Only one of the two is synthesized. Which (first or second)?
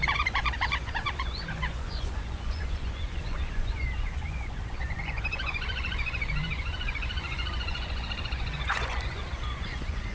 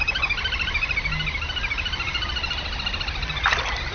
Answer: first